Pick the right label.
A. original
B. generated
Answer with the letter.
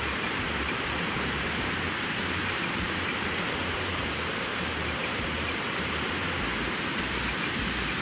B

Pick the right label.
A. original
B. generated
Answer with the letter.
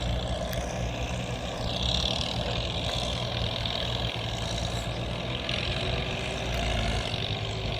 A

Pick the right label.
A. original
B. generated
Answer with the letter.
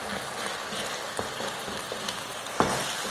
A